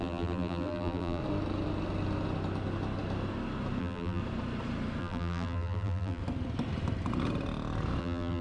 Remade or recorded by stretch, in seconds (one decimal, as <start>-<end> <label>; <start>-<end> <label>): 0.0-1.2 remade; 1.2-3.8 recorded; 3.8-4.2 remade; 4.2-5.0 recorded; 5.0-6.2 remade; 6.2-8.0 recorded; 8.0-8.4 remade